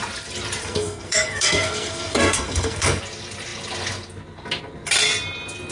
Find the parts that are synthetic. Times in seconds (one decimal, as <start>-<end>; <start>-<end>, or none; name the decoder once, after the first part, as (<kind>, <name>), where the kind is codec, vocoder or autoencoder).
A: 0.6-3.0 (codec, SNAC)